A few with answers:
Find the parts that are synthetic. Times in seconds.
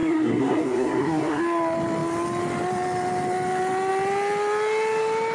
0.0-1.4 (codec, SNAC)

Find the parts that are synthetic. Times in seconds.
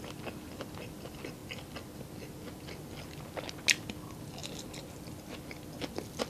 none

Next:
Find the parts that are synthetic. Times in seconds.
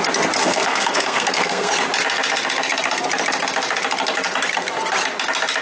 0.4-1.7 (codec, SNAC)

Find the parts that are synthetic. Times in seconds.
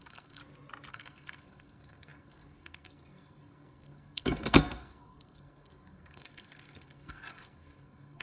0.0-0.4 (codec, SNAC); 0.9-8.2